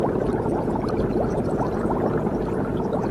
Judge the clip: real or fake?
real